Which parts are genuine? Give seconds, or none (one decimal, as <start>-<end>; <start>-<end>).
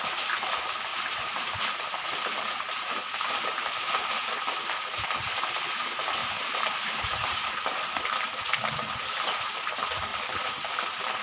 0.0-0.9; 1.6-3.5; 4.5-6.2; 8.0-11.2